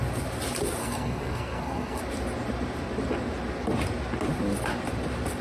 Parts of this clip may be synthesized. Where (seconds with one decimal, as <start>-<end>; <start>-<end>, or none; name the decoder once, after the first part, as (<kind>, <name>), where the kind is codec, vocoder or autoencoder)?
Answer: 0.8-2.0 (codec, SNAC)